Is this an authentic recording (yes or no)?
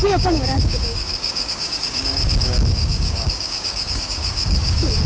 no